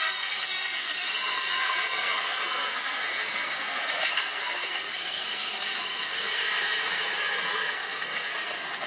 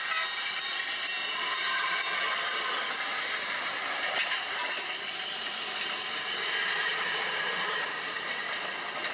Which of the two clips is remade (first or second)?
first